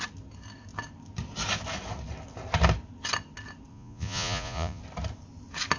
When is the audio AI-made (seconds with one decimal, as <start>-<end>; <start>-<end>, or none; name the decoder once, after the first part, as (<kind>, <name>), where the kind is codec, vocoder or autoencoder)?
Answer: 3.7-4.8 (vocoder, Vocos)